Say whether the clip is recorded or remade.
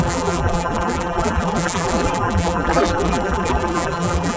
remade